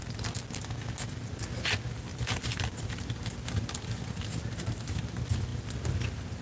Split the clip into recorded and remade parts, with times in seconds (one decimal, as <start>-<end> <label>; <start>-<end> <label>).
0.0-2.1 recorded; 2.1-2.9 remade; 2.9-6.4 recorded